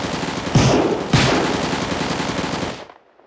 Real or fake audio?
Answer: real